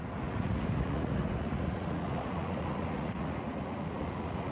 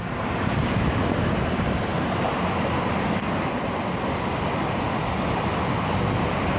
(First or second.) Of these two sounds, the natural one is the second